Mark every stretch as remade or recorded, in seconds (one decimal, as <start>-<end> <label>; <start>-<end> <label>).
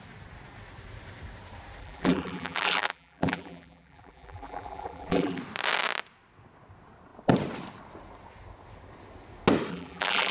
0.0-1.8 recorded; 1.8-5.4 remade; 5.4-9.7 recorded; 9.7-10.3 remade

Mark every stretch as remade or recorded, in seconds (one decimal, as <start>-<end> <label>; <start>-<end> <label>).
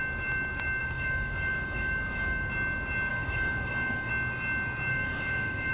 0.0-0.8 recorded; 0.8-2.5 remade; 2.5-3.1 recorded; 3.1-4.1 remade; 4.1-4.9 recorded; 4.9-5.7 remade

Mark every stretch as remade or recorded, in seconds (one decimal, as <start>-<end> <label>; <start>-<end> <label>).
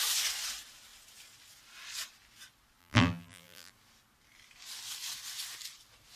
0.0-2.8 recorded; 2.8-3.7 remade; 3.7-6.2 recorded